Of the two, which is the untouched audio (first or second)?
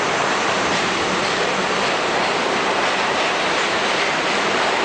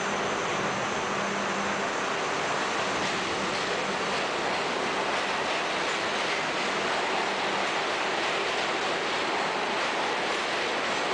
second